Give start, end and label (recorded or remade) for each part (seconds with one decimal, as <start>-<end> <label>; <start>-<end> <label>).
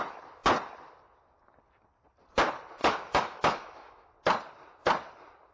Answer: 0.0-2.8 recorded; 2.8-4.1 remade; 4.1-5.5 recorded